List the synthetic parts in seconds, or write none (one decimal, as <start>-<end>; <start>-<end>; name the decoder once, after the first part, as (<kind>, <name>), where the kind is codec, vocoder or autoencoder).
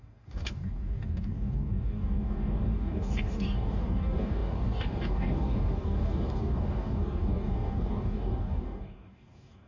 0.0-9.7 (codec, DAC)